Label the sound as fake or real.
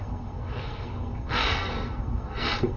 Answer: fake